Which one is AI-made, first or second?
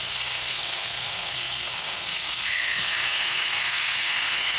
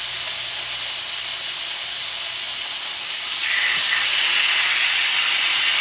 first